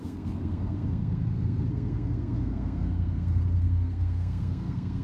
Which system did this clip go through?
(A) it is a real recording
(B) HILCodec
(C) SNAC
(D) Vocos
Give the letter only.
C